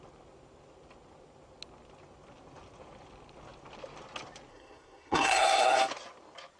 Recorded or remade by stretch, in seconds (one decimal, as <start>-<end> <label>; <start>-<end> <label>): 0.0-4.5 recorded; 4.5-5.8 remade; 5.8-6.6 recorded